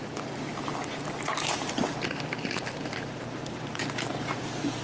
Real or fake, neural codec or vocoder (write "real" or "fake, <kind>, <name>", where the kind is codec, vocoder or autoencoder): fake, vocoder, BigVGAN v2